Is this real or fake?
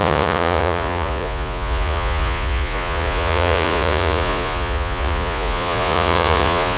fake